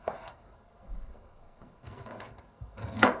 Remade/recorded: remade